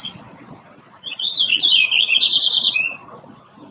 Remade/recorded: remade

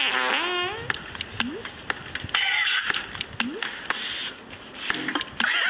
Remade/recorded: recorded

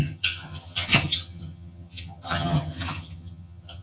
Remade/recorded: remade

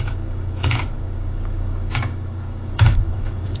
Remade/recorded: remade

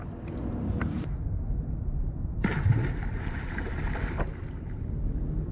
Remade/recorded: recorded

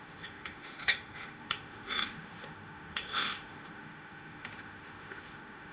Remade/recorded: remade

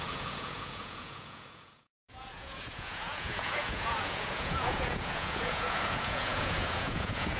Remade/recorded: remade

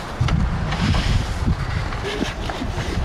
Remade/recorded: recorded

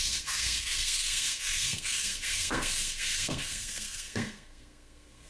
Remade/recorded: remade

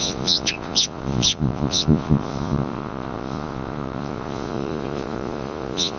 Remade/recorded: remade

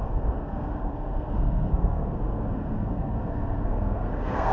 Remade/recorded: remade